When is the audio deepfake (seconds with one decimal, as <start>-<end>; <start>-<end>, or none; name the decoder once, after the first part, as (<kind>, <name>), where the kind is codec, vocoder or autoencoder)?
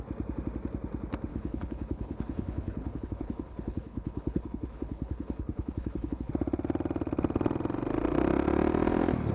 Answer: 1.3-6.3 (codec, HILCodec)